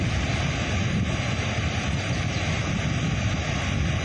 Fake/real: real